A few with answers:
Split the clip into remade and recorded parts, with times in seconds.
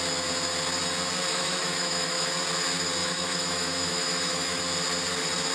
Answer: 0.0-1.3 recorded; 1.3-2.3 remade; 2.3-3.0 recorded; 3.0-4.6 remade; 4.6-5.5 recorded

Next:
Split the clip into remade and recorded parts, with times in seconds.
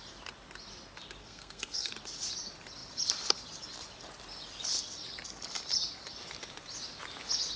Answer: 0.0-1.2 recorded; 1.2-1.9 remade; 1.9-7.6 recorded